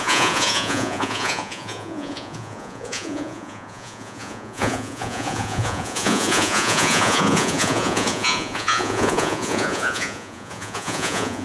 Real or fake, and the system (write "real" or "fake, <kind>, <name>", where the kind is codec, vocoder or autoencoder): fake, vocoder, Vocos